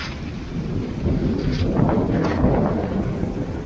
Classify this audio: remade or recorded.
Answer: recorded